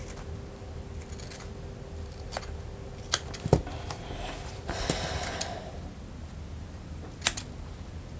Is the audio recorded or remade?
recorded